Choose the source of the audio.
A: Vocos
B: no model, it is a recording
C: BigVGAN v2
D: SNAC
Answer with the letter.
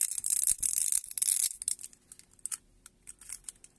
B